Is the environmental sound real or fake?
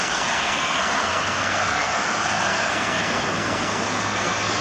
fake